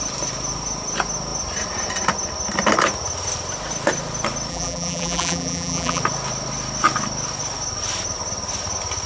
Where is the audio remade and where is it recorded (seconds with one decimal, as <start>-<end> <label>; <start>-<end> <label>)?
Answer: 0.0-4.5 recorded; 4.5-6.0 remade; 6.0-9.1 recorded